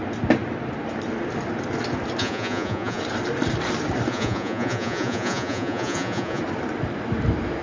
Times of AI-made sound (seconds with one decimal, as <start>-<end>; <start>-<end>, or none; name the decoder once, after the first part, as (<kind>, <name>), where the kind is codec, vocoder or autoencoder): 2.2-3.0 (vocoder, Vocos); 4.1-6.4